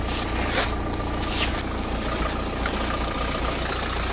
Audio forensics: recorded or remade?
recorded